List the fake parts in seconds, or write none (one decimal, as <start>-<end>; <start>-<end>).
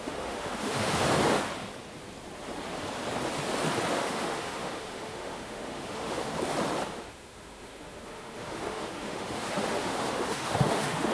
0.0-1.0; 3.9-6.3; 6.9-11.1